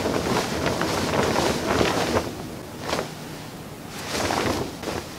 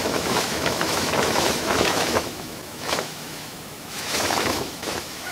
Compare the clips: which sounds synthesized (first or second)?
second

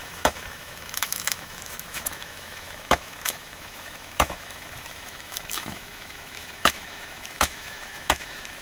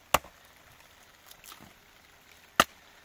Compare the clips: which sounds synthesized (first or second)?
first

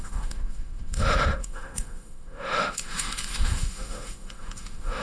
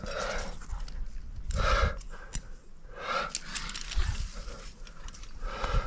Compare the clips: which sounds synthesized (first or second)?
first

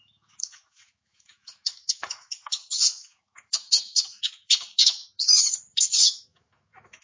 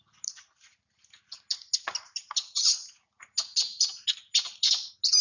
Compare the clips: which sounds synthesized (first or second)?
first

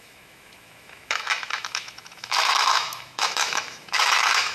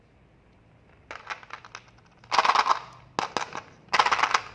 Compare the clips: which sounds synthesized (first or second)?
first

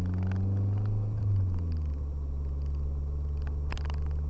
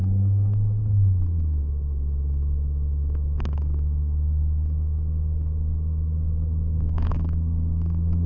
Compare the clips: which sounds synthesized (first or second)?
second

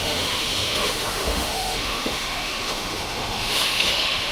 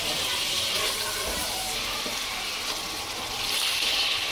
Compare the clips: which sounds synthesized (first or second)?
first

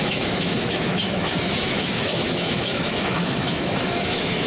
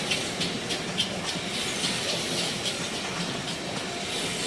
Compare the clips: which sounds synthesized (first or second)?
first